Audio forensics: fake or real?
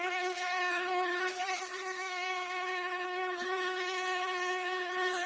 fake